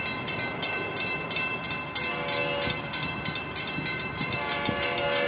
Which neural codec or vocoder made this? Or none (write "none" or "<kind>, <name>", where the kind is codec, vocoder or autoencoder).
none